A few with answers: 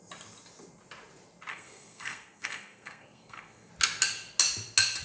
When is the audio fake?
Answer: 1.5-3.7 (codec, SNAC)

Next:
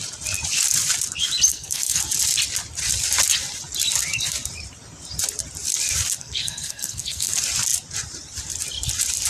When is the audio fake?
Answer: 1.5-2.0 (codec, SNAC); 6.2-7.3